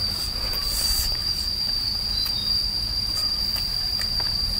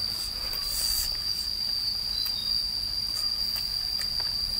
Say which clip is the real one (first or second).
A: second